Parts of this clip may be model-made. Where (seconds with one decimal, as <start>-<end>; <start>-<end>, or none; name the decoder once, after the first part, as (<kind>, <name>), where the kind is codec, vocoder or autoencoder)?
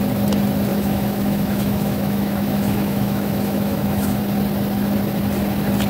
0.7-4.2 (autoencoder, DAC-VAE)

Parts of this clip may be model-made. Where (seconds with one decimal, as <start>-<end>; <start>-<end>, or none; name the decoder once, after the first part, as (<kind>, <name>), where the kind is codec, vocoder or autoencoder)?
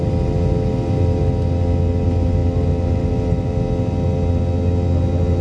none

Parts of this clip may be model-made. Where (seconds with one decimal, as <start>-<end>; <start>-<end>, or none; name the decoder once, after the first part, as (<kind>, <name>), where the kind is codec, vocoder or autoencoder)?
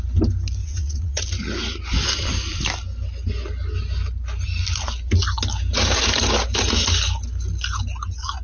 0.6-1.2 (vocoder, WaveNeXt)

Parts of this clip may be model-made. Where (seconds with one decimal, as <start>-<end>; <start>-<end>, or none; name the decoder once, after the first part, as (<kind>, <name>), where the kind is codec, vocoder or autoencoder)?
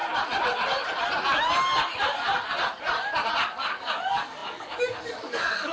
3.4-5.7 (codec, DAC)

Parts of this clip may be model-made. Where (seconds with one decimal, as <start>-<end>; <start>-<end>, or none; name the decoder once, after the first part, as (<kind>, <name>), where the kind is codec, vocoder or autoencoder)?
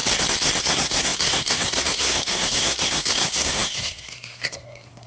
0.6-5.1 (codec, SNAC)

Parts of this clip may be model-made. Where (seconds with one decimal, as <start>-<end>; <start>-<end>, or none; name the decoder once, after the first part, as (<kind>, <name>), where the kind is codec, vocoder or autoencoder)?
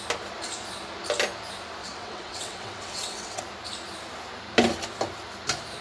1.8-3.4 (vocoder, WaveNeXt)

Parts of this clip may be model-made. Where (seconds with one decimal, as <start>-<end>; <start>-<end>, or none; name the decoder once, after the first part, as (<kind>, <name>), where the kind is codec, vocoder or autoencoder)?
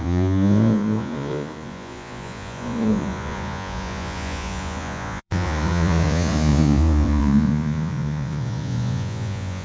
0.0-9.6 (vocoder, Vocos)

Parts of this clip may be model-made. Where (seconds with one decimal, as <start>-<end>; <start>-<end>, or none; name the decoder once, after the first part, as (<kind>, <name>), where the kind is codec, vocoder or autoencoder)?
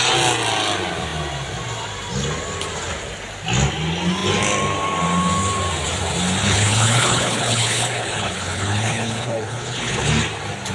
6.4-10.1 (codec, HILCodec)